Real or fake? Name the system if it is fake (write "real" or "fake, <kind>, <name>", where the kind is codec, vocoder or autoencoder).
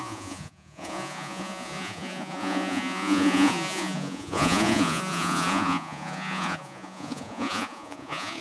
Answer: fake, vocoder, Vocos